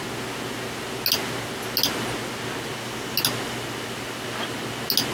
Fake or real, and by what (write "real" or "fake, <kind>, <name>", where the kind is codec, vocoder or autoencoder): real